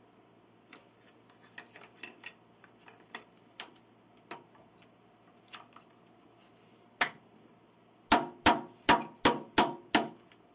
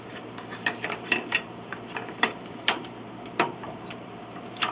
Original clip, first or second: first